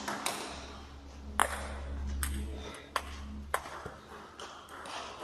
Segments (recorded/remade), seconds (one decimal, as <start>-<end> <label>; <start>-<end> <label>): 0.0-5.2 recorded